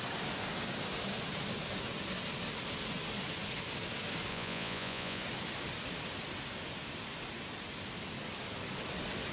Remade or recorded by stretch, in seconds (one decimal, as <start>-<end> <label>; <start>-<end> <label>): 0.0-4.3 recorded; 4.3-5.2 remade; 5.2-9.3 recorded